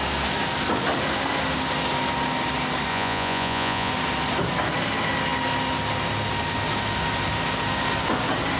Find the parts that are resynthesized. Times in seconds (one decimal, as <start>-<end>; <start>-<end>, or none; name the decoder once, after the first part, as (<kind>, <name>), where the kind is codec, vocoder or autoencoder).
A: 2.9-3.9 (vocoder, Vocos)